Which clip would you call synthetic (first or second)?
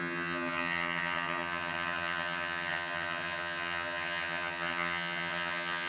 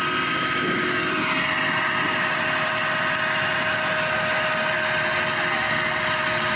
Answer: first